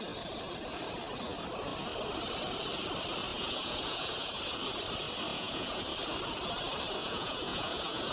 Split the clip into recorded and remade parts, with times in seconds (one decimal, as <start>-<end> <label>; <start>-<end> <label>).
0.0-3.3 recorded; 3.3-4.4 remade; 4.4-5.3 recorded; 5.3-5.8 remade; 5.8-7.0 recorded; 7.0-8.1 remade